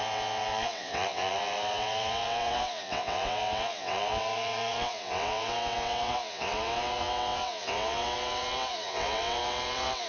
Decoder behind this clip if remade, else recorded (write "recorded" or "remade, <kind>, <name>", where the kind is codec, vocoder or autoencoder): remade, vocoder, WaveNeXt